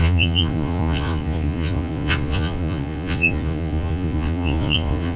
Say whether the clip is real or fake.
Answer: fake